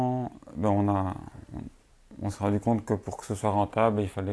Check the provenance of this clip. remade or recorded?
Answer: recorded